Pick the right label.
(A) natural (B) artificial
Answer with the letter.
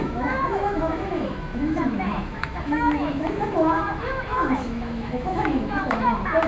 B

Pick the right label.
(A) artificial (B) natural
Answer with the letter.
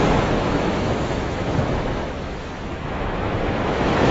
A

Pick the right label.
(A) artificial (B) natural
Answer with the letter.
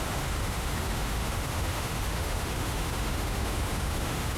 A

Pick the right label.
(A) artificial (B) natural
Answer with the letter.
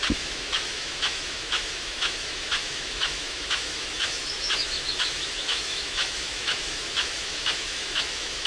A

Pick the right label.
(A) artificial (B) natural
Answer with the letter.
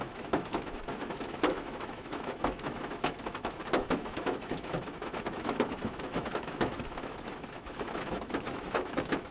A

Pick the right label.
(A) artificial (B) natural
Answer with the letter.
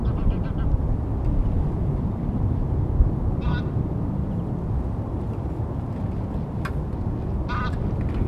B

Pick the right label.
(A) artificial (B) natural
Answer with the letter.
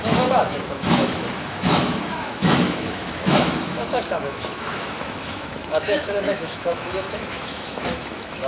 A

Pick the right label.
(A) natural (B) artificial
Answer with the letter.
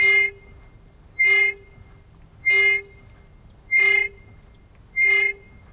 A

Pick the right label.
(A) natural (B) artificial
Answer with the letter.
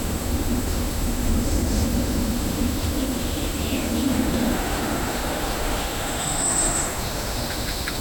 B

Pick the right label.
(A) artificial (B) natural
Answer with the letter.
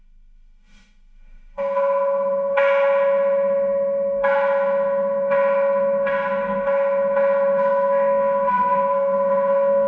A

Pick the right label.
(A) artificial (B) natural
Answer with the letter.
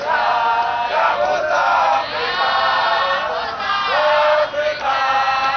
B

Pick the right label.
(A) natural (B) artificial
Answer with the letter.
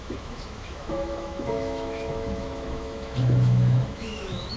B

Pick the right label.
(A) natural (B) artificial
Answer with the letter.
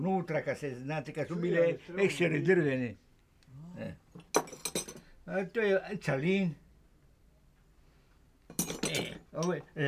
A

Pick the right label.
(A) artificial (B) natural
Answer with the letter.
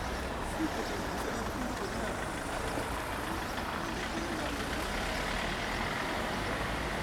B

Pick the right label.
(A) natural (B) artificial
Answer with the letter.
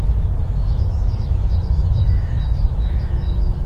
B